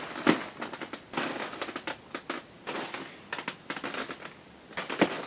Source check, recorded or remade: recorded